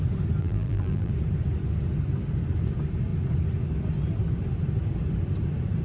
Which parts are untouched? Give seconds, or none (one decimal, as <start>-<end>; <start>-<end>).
0.0-0.4; 1.1-5.8